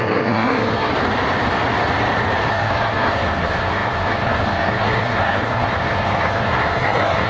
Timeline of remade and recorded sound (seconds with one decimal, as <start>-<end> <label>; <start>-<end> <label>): 0.0-0.9 remade; 0.9-2.5 recorded; 2.5-7.3 remade